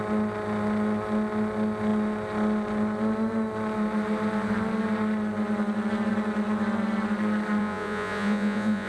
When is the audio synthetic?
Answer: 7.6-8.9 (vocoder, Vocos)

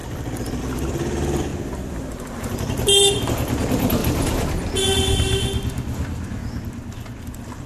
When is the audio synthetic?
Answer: 0.0-4.0 (vocoder, BigVGAN v2); 7.2-7.7

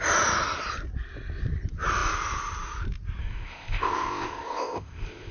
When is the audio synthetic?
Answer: 3.2-5.3 (codec, ZipCodec)

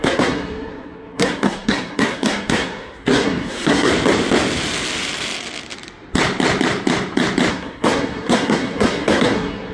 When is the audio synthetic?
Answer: 0.0-3.9 (codec, SNAC); 7.5-9.7

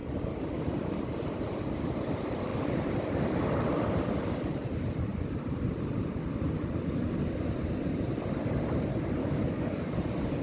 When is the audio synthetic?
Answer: 9.2-10.0 (codec, DAC)

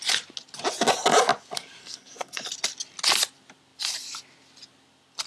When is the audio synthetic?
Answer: 1.8-2.4 (codec, SNAC)

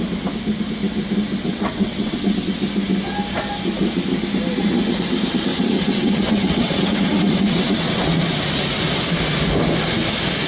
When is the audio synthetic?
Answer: 1.5-2.6 (vocoder, WaveNeXt); 5.5-8.2

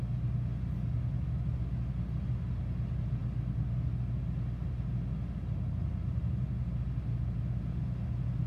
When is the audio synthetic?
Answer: none